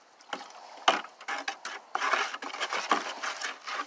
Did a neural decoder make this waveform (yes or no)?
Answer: no